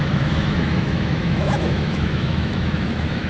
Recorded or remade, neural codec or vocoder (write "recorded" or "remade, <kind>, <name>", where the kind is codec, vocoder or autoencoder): remade, autoencoder, DAC-VAE